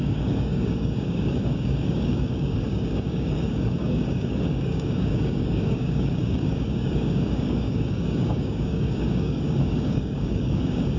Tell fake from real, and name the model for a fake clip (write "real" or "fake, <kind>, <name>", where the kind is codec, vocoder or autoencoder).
fake, codec, DAC